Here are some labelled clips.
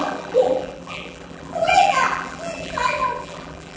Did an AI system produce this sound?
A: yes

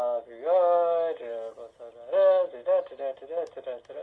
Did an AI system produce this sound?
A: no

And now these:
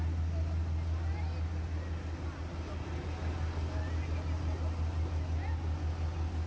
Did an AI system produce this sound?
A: no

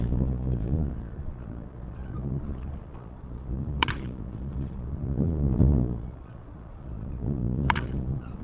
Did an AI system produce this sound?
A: yes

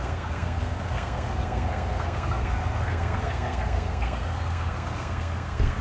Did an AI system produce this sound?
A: yes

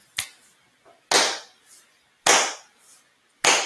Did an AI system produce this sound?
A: no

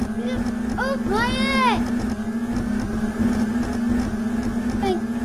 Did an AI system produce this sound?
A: no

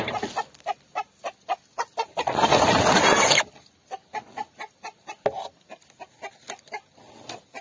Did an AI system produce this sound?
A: no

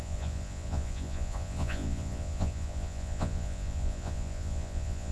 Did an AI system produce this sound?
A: yes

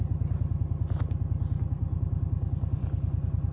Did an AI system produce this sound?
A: no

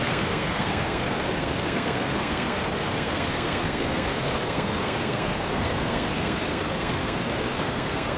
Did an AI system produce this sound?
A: yes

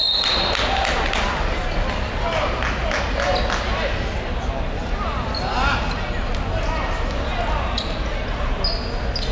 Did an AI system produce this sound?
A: no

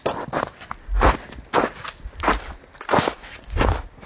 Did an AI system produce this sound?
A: no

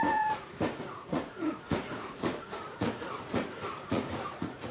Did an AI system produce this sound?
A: yes